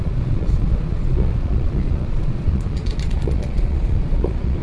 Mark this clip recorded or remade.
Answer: remade